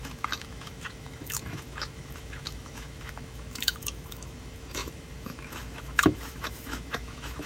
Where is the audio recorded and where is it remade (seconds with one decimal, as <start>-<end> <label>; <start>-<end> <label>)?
0.0-7.5 remade